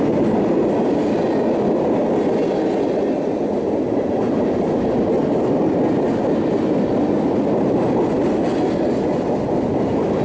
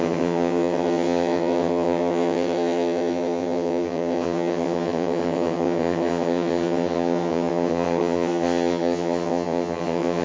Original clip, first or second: first